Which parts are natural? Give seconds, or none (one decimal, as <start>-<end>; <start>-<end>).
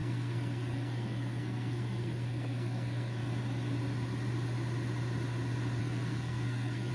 3.2-5.8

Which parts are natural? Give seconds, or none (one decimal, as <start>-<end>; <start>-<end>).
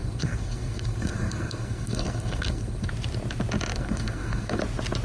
2.9-3.7; 4.6-5.0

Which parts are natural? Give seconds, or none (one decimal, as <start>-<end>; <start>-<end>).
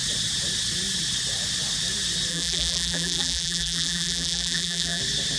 0.0-2.3; 5.0-5.4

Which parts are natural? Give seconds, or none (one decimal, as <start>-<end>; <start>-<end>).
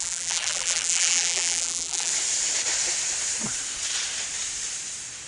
2.1-5.3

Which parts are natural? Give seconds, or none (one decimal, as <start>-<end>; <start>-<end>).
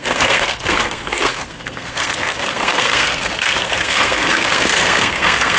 none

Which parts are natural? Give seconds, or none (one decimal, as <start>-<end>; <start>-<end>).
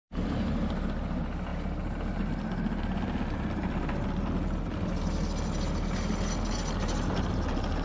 0.0-7.8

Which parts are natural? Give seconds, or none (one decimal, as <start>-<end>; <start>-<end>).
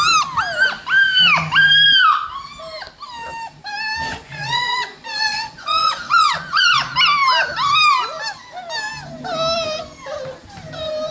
0.0-4.1; 6.8-11.1